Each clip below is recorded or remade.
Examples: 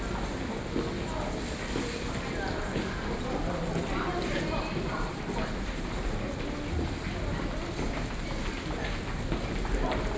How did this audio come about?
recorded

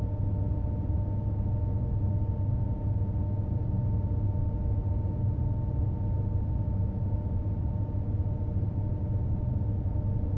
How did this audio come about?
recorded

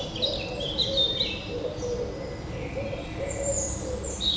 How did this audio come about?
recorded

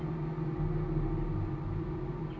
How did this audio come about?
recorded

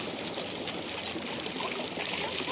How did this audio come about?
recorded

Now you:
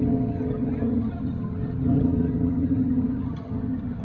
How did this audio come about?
remade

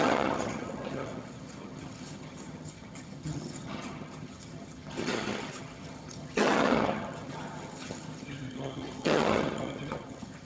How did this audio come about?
remade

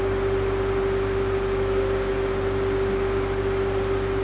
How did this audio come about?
recorded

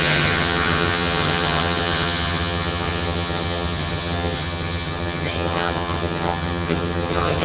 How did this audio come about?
remade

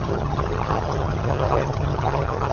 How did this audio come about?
remade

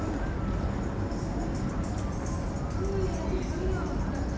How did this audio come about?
recorded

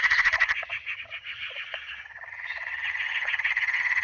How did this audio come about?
remade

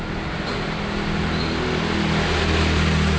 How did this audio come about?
recorded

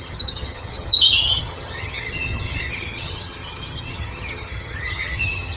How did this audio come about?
remade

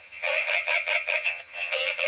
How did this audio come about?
remade